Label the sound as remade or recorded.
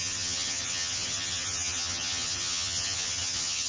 remade